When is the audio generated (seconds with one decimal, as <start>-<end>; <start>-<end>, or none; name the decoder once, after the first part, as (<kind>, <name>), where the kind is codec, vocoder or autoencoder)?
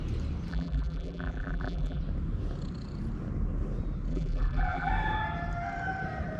0.5-2.0 (vocoder, BigVGAN v2); 4.1-4.9